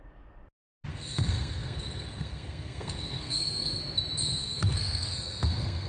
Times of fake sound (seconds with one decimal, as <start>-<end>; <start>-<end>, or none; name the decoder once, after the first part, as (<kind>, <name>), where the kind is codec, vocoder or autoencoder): 0.9-3.8 (codec, SNAC); 4.4-5.9